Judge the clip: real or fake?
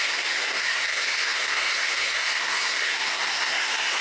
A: fake